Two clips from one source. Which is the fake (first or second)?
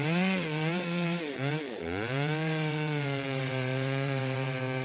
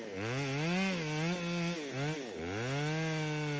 first